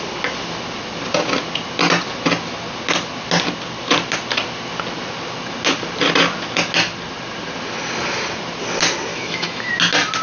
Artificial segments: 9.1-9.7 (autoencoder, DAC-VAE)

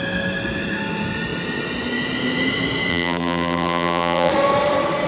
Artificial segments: 2.9-4.3 (vocoder, BigVGAN v2)

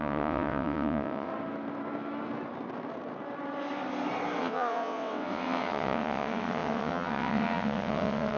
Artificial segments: 0.0-1.3 (vocoder, WaveNeXt); 4.4-8.4

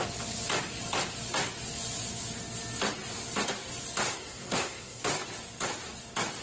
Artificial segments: 4.1-5.0 (codec, SNAC)

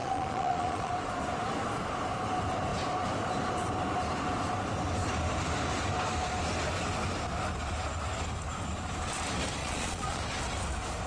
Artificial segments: 0.0-0.9 (vocoder, Vocos); 9.6-10.2